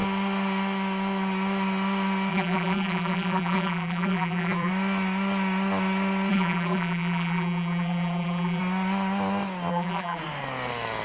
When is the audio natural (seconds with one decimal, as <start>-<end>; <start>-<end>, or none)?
0.0-2.3; 4.7-6.3; 8.6-9.7; 10.2-11.0